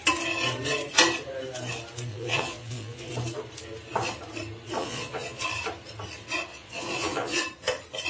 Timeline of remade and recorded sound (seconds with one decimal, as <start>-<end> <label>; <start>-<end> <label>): 0.0-2.1 recorded; 2.1-3.1 remade; 3.1-4.8 recorded; 4.8-5.4 remade; 5.4-6.5 recorded; 6.5-7.4 remade; 7.4-8.1 recorded